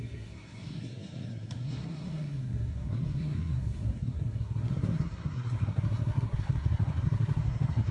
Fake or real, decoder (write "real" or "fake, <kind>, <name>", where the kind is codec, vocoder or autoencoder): fake, codec, SNAC